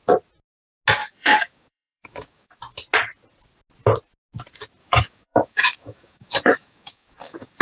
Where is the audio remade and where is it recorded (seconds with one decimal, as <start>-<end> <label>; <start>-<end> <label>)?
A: 0.0-1.0 recorded; 1.0-2.6 remade; 2.6-4.8 recorded; 4.8-7.6 remade

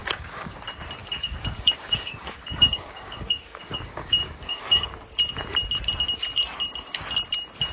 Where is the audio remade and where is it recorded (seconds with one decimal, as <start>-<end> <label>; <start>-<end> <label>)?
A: 0.0-0.6 remade; 0.6-1.0 recorded; 1.0-4.9 remade; 4.9-7.7 recorded

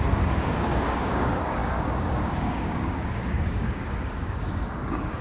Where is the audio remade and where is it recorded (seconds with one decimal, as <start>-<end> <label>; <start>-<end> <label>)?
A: 0.0-5.2 remade

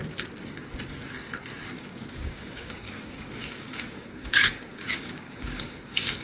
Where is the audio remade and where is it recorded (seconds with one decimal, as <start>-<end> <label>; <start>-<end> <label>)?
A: 0.0-1.7 recorded; 1.7-6.2 remade